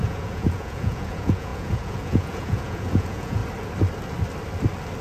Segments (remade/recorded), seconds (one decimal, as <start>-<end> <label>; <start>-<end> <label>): 0.0-3.4 remade; 3.4-5.0 recorded